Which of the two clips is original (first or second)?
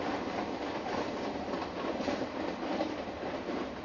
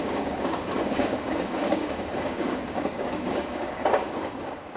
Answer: first